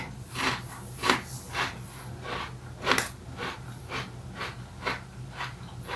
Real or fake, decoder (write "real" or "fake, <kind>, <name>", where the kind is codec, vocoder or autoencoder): real